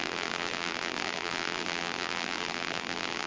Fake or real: fake